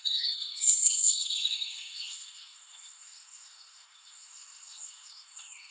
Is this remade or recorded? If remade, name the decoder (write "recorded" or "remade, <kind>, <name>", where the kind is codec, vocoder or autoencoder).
remade, codec, SNAC